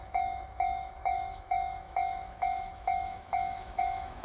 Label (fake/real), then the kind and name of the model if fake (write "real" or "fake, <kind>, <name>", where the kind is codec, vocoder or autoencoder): fake, autoencoder, DAC-VAE